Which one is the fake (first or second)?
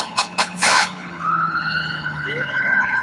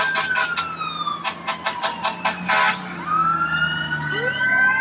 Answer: first